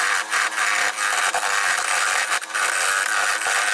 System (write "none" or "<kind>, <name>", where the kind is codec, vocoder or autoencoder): none